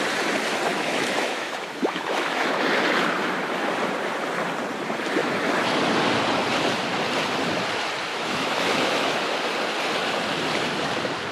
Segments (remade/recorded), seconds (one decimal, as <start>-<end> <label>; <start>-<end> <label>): 0.0-0.7 recorded; 0.7-2.7 remade; 2.7-5.2 recorded; 5.2-5.8 remade; 5.8-8.1 recorded; 8.1-9.2 remade; 9.2-11.3 recorded